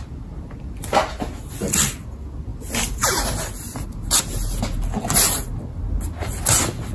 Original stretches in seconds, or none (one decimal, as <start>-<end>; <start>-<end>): 0.0-2.5; 4.2-6.9